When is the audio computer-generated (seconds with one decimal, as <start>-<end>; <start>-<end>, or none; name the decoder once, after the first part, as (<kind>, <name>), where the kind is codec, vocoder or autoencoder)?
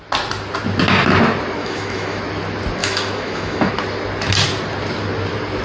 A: 1.6-2.2 (autoencoder, DAC-VAE); 2.8-3.7